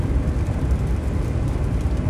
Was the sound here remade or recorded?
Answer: remade